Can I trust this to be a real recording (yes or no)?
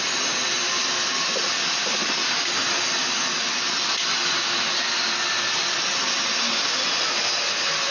yes